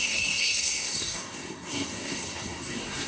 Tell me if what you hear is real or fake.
fake